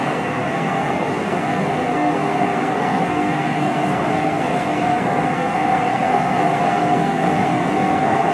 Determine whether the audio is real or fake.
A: fake